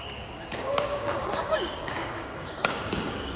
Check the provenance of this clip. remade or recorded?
remade